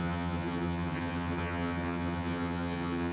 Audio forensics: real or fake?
fake